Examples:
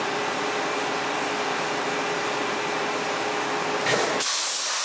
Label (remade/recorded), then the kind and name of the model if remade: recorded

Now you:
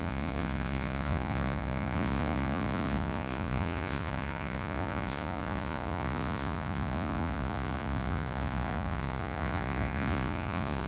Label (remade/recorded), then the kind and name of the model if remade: remade, vocoder, Vocos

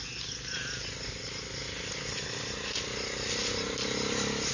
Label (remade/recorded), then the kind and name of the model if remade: recorded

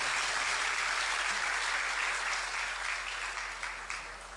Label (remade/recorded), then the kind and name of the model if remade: recorded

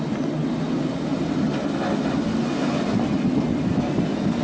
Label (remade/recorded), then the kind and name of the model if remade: recorded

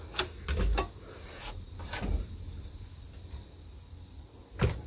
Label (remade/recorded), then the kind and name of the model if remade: recorded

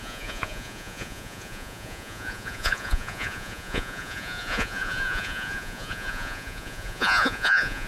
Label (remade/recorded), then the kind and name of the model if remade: remade, vocoder, Vocos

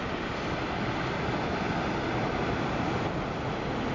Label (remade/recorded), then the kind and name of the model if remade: recorded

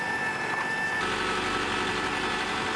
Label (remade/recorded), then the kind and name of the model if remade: recorded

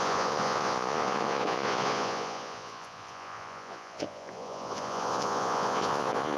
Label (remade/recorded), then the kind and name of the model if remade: remade, vocoder, Vocos